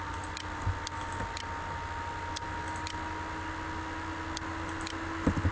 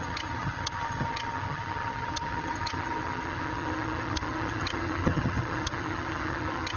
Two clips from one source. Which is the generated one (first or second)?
second